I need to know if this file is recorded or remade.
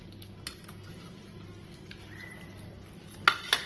recorded